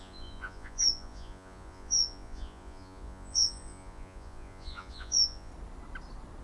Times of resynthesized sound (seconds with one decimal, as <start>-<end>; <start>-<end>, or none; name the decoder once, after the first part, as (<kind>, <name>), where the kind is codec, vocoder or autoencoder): 0.0-5.5 (vocoder, Vocos)